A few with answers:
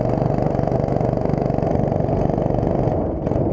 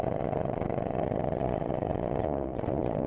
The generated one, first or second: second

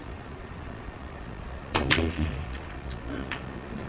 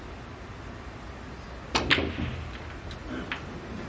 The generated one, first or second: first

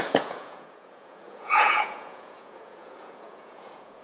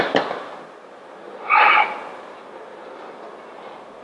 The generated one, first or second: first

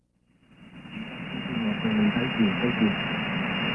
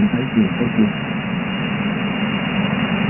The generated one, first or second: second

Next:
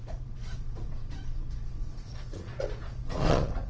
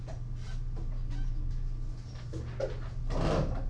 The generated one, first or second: first